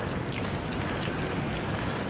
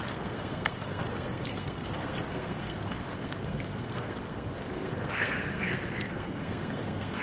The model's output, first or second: second